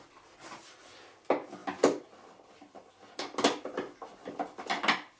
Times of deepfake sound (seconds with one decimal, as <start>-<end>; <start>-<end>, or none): none